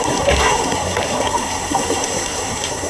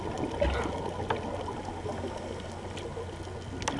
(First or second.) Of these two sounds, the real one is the second